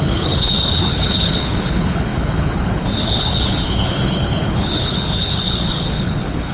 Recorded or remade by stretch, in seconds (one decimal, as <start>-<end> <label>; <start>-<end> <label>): 0.0-6.5 remade